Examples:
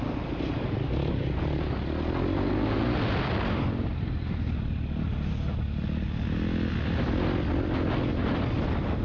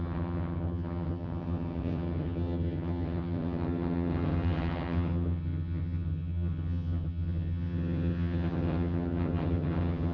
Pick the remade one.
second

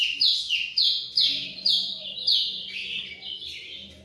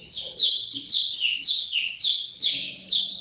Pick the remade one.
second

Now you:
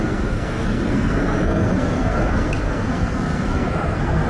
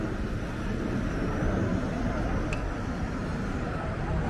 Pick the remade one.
first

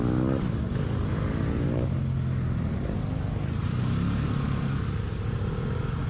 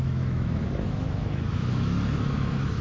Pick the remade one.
second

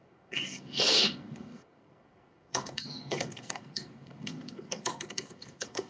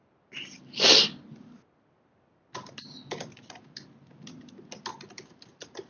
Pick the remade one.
first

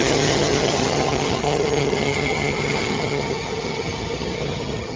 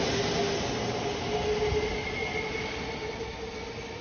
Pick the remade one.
first